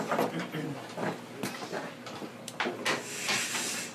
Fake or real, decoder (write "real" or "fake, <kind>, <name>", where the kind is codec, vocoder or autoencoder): real